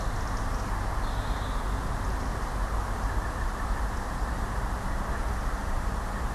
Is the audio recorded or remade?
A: recorded